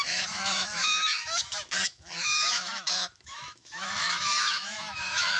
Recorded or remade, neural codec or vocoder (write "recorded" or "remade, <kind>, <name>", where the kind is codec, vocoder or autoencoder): remade, autoencoder, DAC-VAE